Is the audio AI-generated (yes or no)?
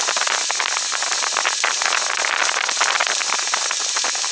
no